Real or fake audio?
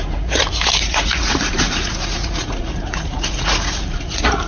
fake